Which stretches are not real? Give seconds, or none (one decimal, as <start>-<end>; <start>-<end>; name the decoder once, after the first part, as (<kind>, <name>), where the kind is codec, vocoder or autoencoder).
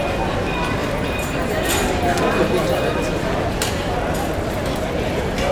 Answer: none